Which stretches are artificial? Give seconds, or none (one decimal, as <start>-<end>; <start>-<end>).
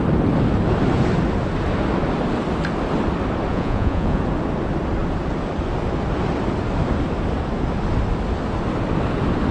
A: 3.5-4.2